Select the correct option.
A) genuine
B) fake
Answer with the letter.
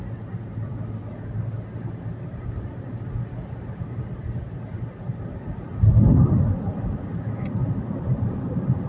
A